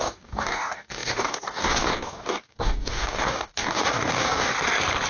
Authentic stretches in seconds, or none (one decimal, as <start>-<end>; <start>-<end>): 4.5-5.1